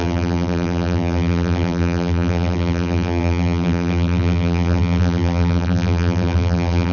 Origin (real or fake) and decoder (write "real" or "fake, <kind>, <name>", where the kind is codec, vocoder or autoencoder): fake, vocoder, BigVGAN v2